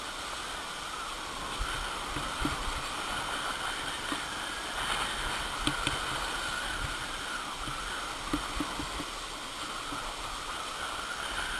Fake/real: real